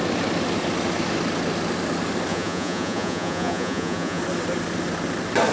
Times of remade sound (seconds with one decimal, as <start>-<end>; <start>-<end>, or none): 2.3-4.2